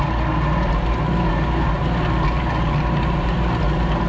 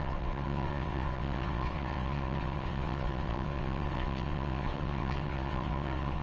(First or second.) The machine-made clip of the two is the second